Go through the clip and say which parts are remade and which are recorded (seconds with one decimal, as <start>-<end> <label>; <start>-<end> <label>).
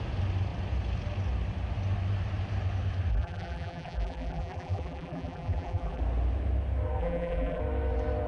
0.0-3.1 recorded; 3.1-6.0 remade; 6.0-7.0 recorded; 7.0-7.6 remade; 7.6-8.3 recorded